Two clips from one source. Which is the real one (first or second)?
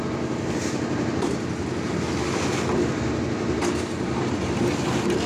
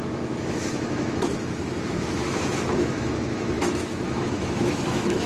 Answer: first